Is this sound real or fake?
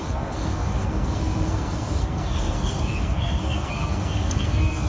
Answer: fake